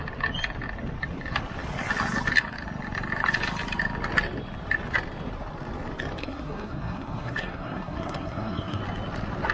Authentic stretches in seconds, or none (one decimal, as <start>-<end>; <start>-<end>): 0.0-6.2; 8.8-9.5